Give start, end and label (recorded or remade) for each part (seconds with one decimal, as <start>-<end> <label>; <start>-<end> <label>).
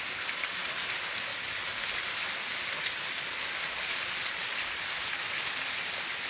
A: 0.0-6.3 recorded